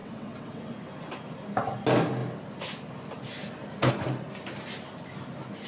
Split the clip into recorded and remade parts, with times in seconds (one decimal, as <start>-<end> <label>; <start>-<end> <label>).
0.0-0.6 remade; 0.6-5.7 recorded